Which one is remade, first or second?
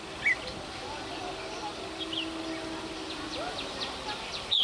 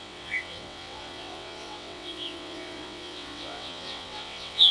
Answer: second